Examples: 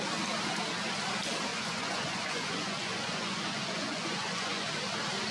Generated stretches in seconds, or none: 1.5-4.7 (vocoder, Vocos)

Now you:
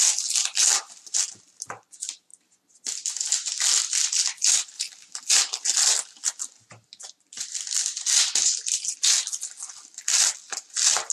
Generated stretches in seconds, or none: none